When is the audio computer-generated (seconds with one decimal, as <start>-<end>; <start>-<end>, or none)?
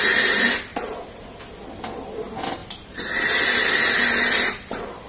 0.7-1.4; 2.6-3.5